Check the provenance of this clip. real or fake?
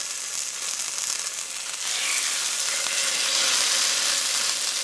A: real